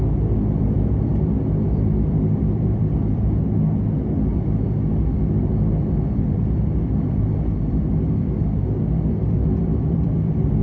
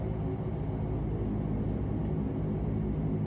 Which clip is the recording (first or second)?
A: second